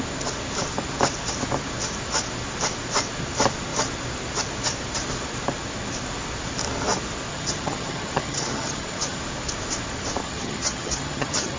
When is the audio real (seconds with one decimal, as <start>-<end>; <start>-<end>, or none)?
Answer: 0.0-7.3; 9.2-10.2